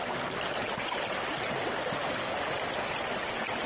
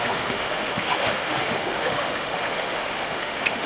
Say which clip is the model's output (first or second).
second